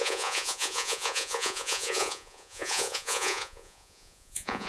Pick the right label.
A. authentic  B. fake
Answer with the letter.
B